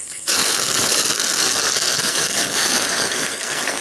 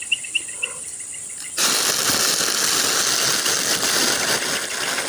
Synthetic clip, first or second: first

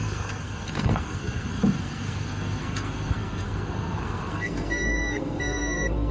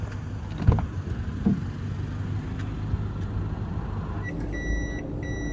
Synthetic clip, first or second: first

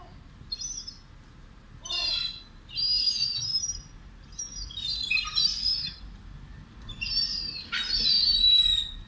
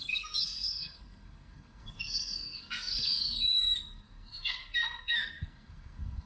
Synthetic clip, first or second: second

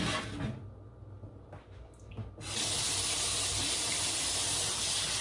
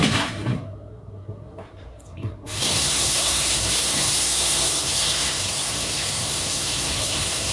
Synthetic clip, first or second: second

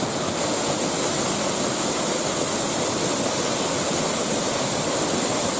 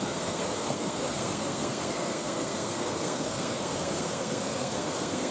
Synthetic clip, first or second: second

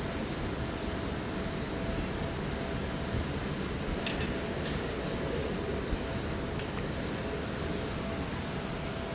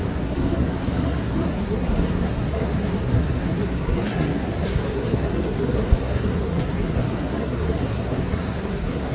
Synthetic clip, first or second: second